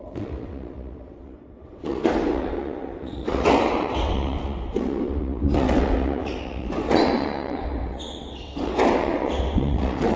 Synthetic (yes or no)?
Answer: yes